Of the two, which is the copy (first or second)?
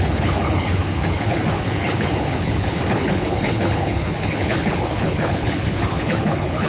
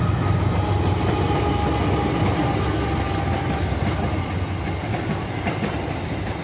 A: first